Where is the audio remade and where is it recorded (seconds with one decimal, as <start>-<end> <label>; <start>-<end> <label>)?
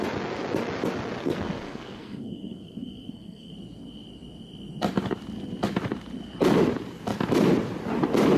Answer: 0.0-1.2 recorded; 1.2-3.5 remade; 3.5-8.4 recorded